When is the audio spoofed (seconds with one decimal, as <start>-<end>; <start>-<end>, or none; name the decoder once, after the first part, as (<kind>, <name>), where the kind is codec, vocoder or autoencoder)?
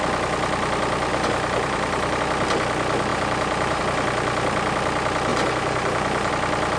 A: 1.1-2.2 (vocoder, BigVGAN v2); 3.1-3.8; 5.3-6.3